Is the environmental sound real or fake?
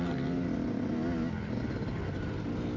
real